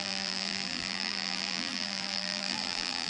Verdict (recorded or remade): remade